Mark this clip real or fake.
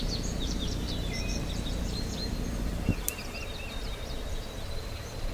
fake